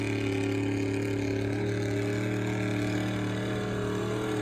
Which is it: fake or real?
real